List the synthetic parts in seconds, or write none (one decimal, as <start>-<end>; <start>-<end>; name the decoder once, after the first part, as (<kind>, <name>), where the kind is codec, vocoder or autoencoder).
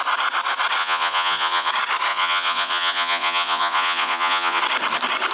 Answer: 0.8-1.7 (vocoder, Vocos); 2.1-4.6